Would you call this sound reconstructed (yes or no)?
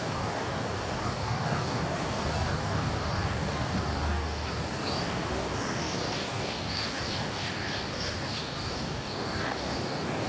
yes